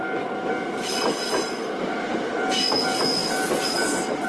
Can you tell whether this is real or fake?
real